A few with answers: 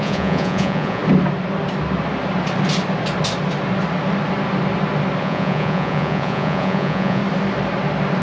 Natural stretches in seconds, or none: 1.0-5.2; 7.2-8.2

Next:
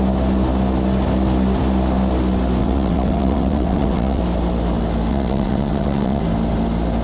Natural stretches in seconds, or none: 0.0-2.6; 4.2-5.1; 6.2-7.0

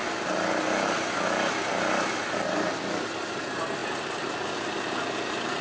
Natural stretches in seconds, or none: 0.0-5.6

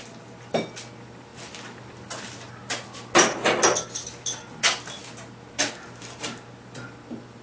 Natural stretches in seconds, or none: 0.0-7.4

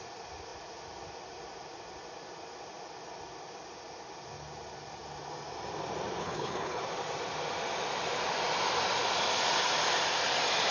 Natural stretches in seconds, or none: 0.0-6.2; 6.8-10.7

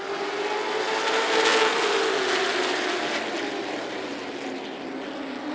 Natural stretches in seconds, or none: 0.0-5.5